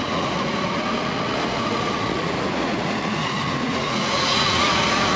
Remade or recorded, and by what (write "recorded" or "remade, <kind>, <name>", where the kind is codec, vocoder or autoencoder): remade, vocoder, Vocos